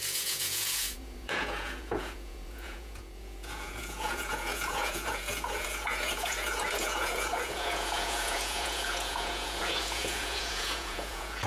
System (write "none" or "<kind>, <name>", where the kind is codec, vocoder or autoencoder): vocoder, Vocos